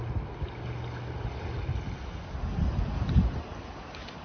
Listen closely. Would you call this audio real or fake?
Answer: real